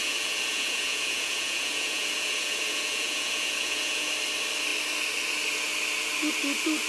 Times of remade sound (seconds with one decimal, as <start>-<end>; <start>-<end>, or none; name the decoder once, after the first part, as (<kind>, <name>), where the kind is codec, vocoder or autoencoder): 0.0-4.1 (vocoder, Vocos)